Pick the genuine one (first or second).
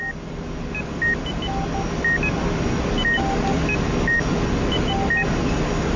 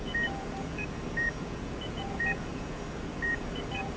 first